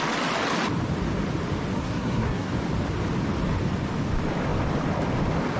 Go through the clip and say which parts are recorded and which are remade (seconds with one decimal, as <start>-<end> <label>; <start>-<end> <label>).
0.0-1.8 recorded; 1.8-2.5 remade; 2.5-5.6 recorded